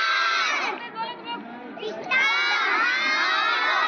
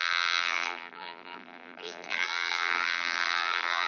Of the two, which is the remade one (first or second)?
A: second